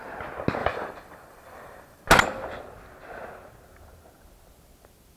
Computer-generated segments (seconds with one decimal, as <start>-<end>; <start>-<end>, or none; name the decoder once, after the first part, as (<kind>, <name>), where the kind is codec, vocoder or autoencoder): 0.6-2.0 (vocoder, BigVGAN v2)